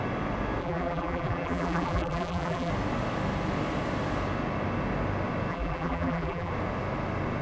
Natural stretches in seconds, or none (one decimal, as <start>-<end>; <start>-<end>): 0.0-0.6; 2.7-5.5; 6.5-7.4